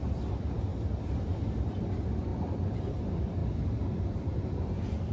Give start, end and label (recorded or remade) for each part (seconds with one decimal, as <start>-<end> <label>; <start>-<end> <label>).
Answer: 0.0-0.7 remade; 0.7-1.7 recorded; 1.7-5.1 remade